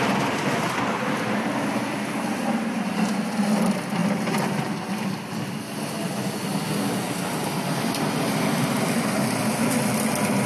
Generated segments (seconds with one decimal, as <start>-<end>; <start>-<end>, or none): none